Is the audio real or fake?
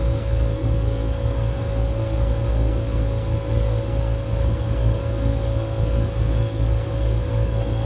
fake